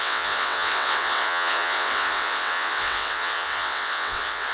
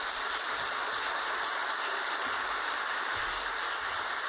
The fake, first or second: first